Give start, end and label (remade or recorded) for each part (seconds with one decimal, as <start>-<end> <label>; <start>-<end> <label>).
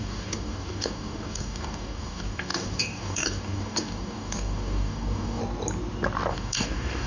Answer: 0.0-5.4 remade; 5.4-6.3 recorded; 6.3-7.1 remade